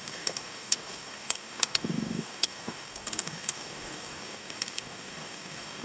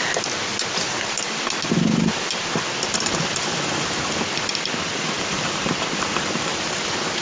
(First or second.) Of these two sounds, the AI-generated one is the first